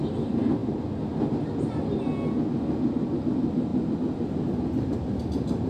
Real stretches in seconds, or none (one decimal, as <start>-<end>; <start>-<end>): 0.0-5.7